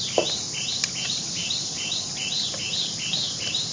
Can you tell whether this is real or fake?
real